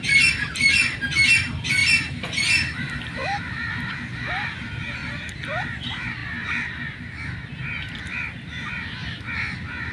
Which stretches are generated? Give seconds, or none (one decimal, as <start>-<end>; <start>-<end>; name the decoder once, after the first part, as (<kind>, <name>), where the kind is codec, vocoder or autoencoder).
none